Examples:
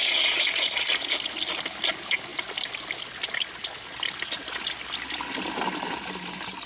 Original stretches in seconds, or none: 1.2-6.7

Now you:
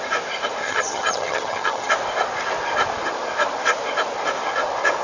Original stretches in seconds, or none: 0.0-0.6; 1.9-5.0

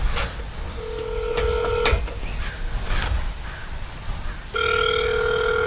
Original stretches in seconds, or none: 0.0-5.7

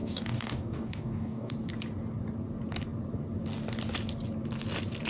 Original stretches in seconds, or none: 1.5-5.1